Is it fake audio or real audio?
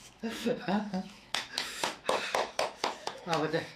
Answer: fake